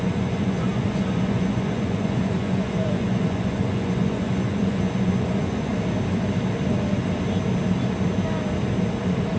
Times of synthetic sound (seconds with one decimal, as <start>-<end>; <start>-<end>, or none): 0.0-5.7